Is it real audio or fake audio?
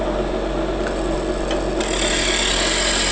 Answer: real